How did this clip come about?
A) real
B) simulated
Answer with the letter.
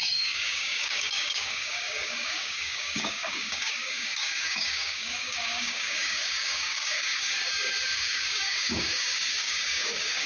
B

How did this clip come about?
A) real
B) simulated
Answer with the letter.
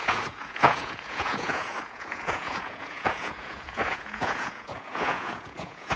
B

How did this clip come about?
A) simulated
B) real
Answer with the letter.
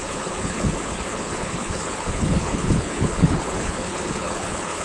A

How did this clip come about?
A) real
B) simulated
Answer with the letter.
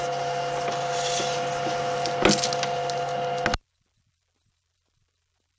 A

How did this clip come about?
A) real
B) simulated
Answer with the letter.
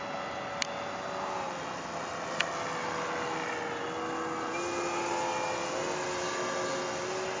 A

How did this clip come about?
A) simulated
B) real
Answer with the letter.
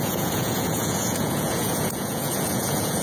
A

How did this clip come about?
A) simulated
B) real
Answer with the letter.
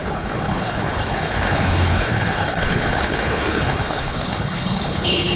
A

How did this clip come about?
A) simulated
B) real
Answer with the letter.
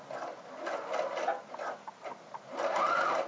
B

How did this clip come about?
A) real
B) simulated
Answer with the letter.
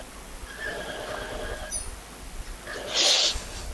A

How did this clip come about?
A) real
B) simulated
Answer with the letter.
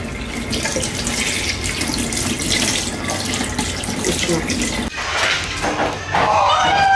A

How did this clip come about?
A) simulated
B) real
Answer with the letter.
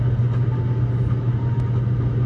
B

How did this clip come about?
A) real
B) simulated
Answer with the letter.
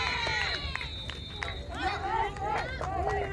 A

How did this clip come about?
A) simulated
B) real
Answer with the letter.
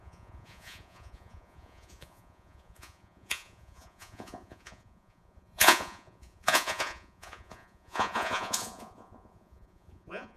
A